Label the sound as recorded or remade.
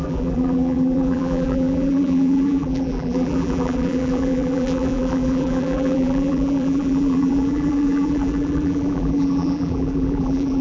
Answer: remade